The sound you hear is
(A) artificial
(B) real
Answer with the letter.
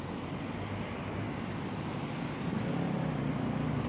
B